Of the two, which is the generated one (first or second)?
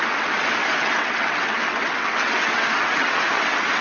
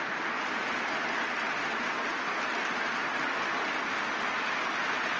first